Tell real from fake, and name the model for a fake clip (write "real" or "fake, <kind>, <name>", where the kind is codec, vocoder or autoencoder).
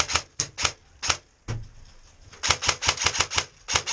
real